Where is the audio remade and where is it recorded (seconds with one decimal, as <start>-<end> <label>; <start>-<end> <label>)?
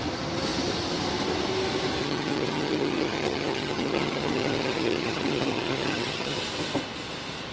0.0-2.0 recorded; 2.0-6.4 remade; 6.4-7.5 recorded